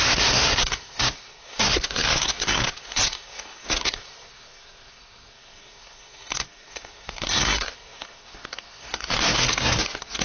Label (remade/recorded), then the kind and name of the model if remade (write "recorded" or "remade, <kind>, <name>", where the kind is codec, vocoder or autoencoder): remade, codec, SNAC